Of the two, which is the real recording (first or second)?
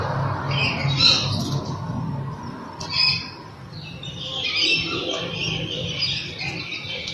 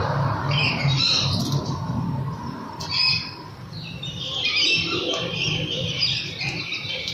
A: first